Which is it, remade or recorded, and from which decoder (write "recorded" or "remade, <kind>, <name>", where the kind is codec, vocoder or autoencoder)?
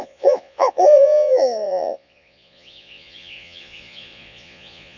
remade, vocoder, Vocos